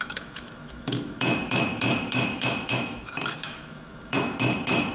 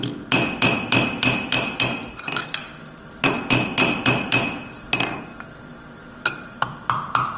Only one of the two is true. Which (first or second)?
second